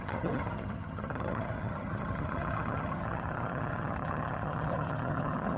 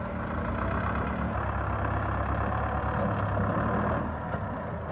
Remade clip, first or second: first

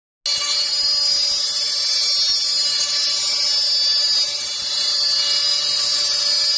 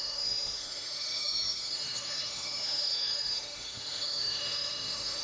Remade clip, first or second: second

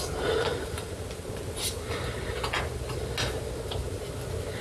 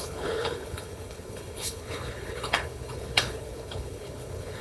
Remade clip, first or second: second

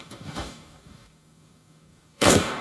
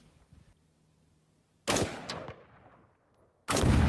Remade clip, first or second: first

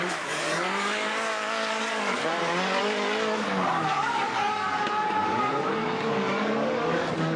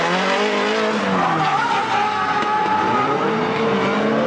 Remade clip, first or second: first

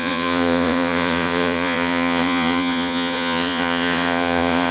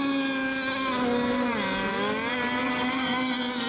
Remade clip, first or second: first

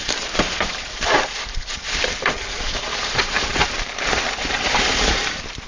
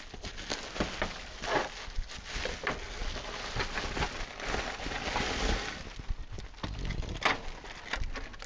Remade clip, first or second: first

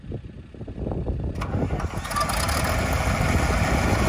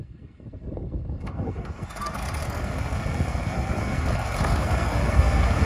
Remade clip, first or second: second